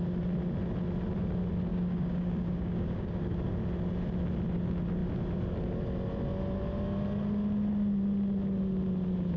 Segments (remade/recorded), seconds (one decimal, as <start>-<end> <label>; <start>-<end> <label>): 0.0-1.7 recorded; 1.7-3.5 remade; 3.5-9.4 recorded